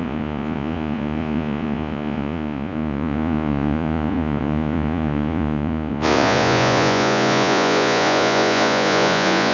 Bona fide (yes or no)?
no